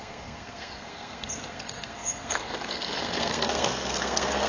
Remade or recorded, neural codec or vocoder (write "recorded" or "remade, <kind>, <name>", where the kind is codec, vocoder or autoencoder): remade, codec, SNAC